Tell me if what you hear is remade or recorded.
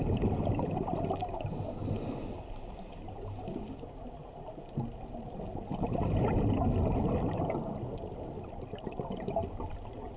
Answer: recorded